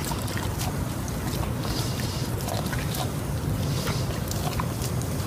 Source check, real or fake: real